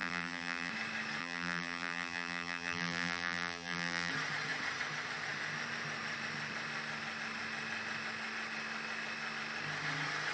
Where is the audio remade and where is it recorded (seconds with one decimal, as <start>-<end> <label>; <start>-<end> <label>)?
0.0-0.7 remade; 0.7-1.2 recorded; 1.2-4.1 remade; 4.1-10.3 recorded

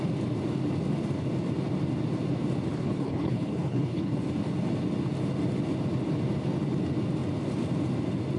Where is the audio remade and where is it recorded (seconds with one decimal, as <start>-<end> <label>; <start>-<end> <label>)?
0.0-2.7 recorded; 2.7-4.2 remade; 4.2-8.4 recorded